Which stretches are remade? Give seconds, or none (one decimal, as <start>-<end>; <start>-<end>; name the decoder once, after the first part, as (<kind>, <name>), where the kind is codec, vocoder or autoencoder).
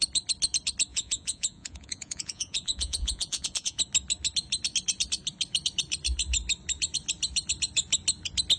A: 0.9-3.8 (vocoder, Vocos)